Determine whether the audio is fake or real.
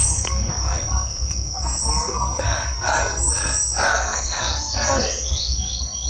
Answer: fake